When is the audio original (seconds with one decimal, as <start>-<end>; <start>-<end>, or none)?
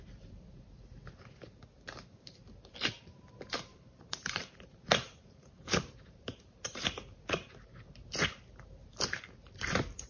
0.0-3.7; 7.9-8.8; 9.7-10.1